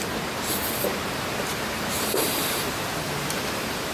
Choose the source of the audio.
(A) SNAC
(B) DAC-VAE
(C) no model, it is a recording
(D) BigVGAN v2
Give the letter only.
D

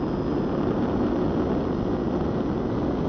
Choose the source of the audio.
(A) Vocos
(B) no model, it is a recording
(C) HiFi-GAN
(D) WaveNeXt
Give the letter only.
B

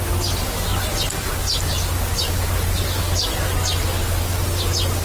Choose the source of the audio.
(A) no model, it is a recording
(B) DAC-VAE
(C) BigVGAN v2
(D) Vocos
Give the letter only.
A